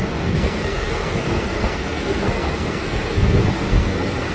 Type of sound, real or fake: fake